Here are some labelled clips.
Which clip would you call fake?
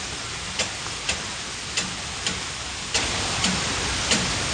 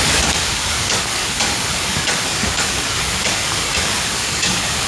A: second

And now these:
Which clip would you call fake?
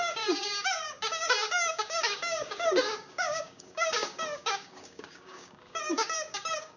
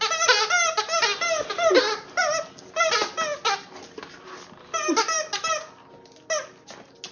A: first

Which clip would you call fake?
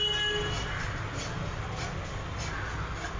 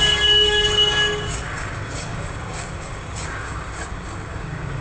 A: second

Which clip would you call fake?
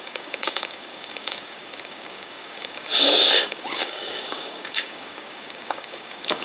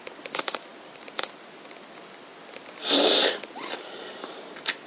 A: first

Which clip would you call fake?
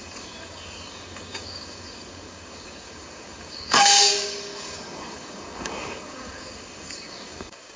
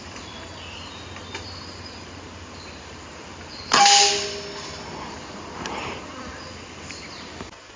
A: first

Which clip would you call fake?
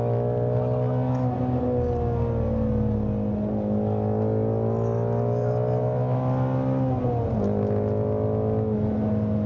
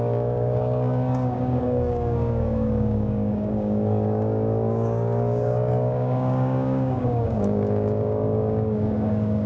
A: second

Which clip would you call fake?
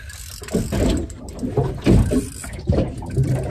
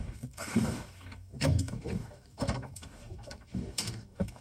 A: second